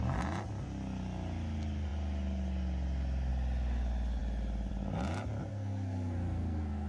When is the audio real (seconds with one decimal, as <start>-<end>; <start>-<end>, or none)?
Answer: 0.0-5.5